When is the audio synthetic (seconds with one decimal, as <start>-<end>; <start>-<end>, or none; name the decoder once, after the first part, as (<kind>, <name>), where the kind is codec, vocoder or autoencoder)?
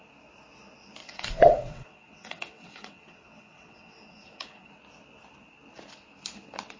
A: 1.0-4.7 (vocoder, WaveNeXt)